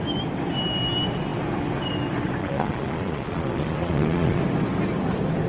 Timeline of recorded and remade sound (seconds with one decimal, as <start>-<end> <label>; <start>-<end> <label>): 0.0-2.4 recorded; 2.4-4.4 remade; 4.4-5.5 recorded